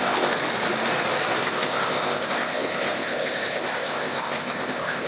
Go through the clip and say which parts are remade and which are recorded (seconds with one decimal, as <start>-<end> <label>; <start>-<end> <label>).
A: 0.0-0.4 remade; 0.4-1.4 recorded; 1.4-5.1 remade